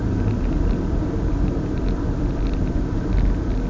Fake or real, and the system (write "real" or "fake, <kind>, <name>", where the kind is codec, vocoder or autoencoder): real